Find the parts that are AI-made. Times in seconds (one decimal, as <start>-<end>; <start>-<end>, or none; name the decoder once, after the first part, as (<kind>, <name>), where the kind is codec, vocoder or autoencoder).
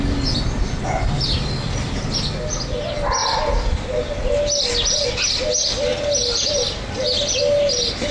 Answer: none